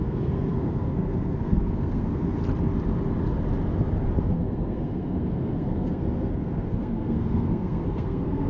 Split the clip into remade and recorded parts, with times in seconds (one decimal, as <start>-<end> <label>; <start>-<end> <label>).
0.0-2.4 remade; 2.4-4.2 recorded; 4.2-8.5 remade